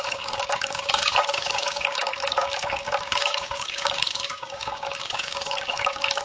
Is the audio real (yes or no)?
no